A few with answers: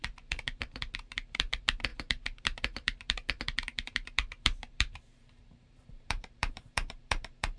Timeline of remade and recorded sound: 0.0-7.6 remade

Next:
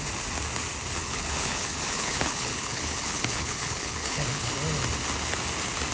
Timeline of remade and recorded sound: 0.0-1.0 recorded; 1.0-4.5 remade; 4.5-5.9 recorded

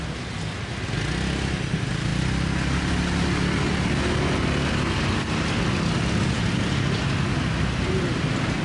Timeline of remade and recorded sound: 0.0-8.6 recorded

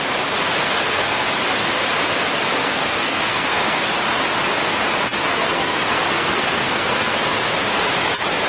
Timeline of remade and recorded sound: 0.0-0.6 recorded; 0.6-1.2 remade; 1.2-2.6 recorded; 2.6-3.9 remade; 3.9-5.2 recorded; 5.2-7.2 remade; 7.2-8.5 recorded